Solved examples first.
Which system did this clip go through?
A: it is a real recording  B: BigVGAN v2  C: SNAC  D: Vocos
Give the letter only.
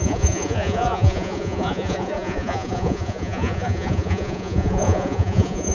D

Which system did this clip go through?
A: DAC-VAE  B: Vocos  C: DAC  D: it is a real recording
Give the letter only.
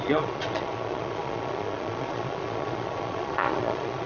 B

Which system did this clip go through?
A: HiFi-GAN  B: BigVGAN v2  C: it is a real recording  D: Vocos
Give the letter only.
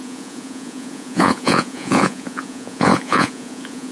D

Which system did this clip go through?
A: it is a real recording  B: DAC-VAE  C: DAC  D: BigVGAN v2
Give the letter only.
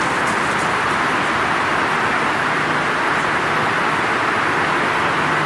A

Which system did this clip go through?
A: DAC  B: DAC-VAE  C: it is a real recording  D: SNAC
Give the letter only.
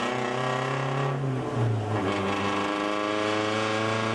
C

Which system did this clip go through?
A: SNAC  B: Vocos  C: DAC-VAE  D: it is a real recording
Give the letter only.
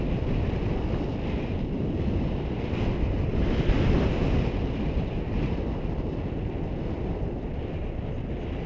D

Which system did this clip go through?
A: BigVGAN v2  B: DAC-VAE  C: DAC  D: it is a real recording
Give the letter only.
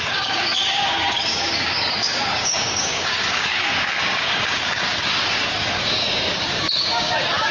C